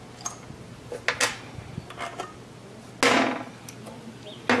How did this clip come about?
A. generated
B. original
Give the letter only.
B